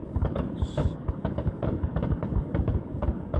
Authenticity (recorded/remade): remade